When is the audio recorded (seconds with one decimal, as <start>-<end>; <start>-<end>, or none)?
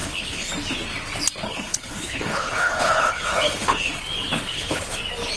0.5-1.5; 3.9-4.5; 5.0-5.4